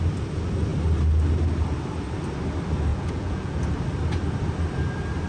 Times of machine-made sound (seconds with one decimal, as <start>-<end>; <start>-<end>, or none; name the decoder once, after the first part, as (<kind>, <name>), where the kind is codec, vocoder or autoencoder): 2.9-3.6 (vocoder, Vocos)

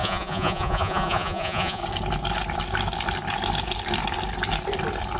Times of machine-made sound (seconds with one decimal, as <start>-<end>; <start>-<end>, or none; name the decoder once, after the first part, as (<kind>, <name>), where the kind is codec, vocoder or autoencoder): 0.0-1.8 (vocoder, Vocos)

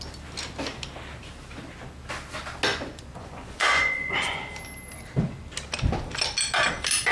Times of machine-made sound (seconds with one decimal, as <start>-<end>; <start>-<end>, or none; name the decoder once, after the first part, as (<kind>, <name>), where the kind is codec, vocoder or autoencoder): 2.7-4.5 (vocoder, Vocos)

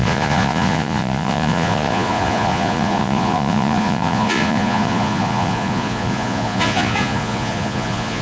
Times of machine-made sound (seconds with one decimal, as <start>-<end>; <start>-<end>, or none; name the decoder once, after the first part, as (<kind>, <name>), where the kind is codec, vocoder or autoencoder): 0.0-8.2 (vocoder, Vocos)

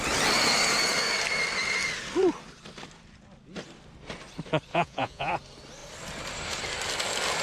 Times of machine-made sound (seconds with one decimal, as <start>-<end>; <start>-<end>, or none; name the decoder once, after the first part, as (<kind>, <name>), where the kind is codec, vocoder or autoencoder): 4.7-5.3 (vocoder, Vocos)